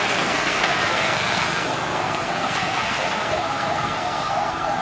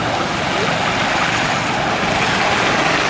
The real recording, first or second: second